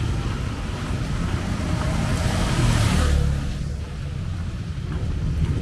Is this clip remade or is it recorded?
recorded